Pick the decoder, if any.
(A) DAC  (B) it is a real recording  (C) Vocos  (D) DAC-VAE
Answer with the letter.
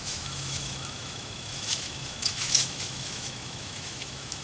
D